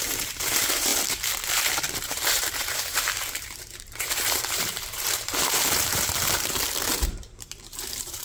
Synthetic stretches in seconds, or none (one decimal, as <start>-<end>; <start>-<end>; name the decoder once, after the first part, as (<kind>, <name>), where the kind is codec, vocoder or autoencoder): 0.0-8.2 (vocoder, BigVGAN v2)